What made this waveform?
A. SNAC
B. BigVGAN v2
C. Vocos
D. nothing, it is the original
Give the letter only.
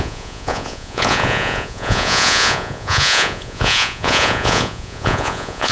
C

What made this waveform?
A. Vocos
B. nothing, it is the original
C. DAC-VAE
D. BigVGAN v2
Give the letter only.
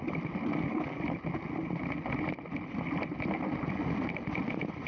B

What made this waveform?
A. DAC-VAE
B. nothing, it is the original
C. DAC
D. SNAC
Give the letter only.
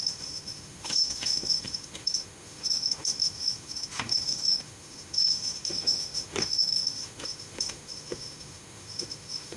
A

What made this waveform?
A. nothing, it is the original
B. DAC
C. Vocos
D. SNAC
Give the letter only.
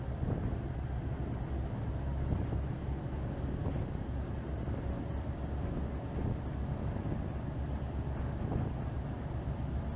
A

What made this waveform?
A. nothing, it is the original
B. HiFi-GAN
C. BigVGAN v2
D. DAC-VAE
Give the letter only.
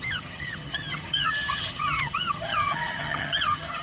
B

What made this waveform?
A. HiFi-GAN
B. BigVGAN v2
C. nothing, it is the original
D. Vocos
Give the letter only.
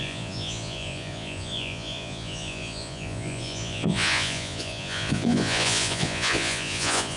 D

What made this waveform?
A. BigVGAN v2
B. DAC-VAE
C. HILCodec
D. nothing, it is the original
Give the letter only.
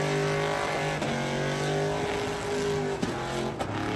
D